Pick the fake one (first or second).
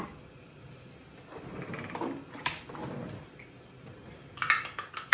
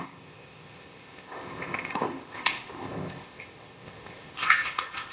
second